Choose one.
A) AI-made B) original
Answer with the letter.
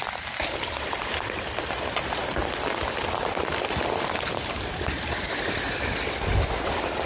B